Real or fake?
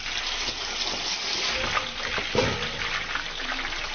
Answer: real